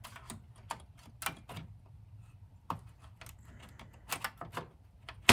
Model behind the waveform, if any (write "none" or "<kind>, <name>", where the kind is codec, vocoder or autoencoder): none